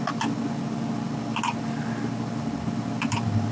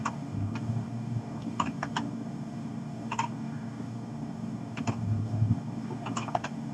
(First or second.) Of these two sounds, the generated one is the second